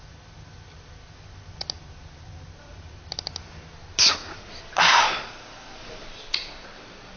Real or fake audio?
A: real